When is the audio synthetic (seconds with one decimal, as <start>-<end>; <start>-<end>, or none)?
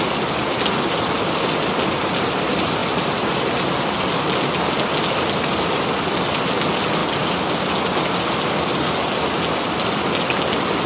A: none